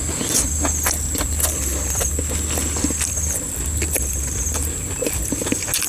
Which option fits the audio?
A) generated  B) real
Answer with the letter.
B